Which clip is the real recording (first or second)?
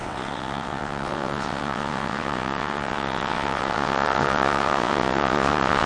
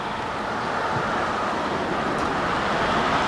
second